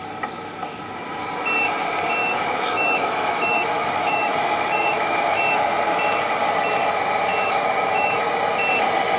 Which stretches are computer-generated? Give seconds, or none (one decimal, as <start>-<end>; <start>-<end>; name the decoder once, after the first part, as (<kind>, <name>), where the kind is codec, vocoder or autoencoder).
2.2-5.4 (autoencoder, DAC-VAE); 7.3-8.3